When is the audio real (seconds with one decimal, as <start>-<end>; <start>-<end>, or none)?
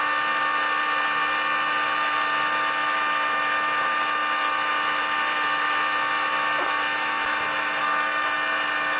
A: 0.0-9.0